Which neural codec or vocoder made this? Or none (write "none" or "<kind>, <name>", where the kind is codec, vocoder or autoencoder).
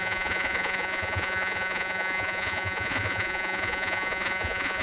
vocoder, Vocos